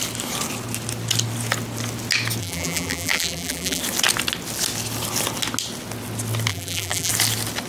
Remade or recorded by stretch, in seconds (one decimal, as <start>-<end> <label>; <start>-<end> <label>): 0.0-2.4 recorded; 2.4-3.8 remade; 3.8-6.5 recorded; 6.5-7.1 remade; 7.1-7.7 recorded